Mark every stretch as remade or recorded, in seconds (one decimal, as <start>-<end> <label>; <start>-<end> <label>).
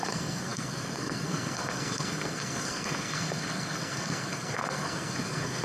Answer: 0.0-5.6 remade